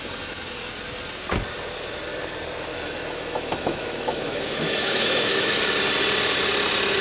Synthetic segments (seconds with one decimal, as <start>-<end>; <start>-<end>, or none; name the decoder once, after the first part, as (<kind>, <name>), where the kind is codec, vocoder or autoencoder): 2.7-5.6 (autoencoder, DAC-VAE)